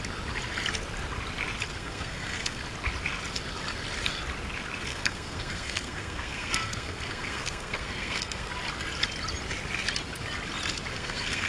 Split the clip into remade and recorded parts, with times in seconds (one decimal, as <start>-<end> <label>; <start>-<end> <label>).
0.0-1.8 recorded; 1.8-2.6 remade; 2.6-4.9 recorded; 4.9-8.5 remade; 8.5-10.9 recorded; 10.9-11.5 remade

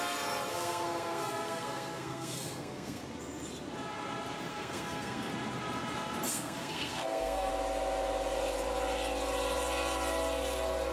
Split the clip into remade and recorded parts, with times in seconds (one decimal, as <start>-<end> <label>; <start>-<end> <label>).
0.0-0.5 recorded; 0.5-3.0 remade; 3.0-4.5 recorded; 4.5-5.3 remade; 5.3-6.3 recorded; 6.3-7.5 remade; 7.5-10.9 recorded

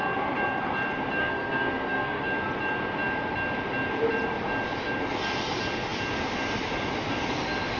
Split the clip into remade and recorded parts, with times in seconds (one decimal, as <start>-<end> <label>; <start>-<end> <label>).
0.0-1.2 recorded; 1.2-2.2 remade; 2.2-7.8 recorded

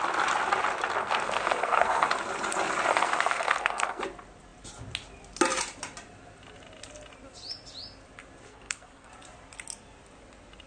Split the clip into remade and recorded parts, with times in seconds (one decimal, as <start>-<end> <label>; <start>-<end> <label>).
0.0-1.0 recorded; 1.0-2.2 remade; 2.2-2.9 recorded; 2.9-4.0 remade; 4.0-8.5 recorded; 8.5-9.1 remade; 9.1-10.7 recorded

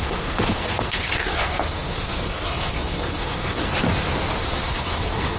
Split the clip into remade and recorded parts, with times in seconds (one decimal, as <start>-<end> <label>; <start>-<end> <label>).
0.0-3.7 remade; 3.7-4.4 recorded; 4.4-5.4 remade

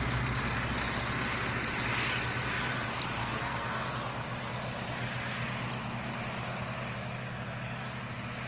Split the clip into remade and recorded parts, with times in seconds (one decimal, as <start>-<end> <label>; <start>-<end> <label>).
0.0-3.2 recorded; 3.2-3.9 remade; 3.9-8.5 recorded